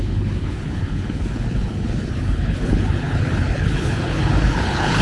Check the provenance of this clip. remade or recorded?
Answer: remade